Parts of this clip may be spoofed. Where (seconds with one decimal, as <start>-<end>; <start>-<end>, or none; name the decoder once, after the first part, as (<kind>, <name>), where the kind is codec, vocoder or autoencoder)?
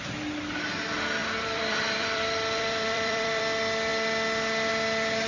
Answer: 1.2-3.4 (vocoder, BigVGAN v2)